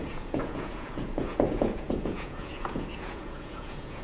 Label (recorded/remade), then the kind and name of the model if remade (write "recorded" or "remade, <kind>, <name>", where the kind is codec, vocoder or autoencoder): remade, vocoder, Vocos